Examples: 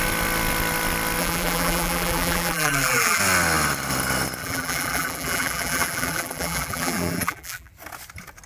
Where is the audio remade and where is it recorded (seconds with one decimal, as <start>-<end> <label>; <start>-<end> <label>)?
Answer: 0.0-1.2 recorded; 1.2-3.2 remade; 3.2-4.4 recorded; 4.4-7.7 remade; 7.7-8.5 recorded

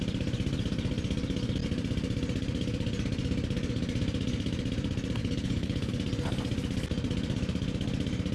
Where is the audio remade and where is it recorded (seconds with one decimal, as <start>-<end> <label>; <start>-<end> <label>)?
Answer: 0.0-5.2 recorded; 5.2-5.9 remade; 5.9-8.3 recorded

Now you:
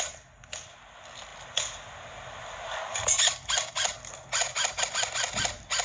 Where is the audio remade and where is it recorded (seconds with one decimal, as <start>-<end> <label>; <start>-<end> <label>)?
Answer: 0.0-5.8 recorded